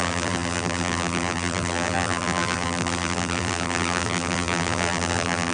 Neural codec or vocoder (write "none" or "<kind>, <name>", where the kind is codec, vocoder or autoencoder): vocoder, BigVGAN v2